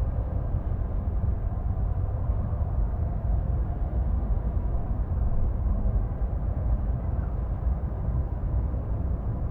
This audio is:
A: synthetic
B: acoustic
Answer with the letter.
A